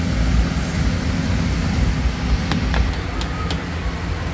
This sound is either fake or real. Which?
real